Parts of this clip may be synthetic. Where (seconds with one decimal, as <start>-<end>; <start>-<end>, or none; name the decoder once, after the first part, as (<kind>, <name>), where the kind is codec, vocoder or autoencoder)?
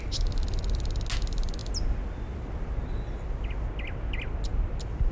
none